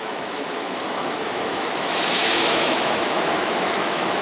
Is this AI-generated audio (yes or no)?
yes